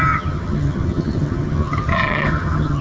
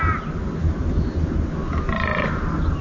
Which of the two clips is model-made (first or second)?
first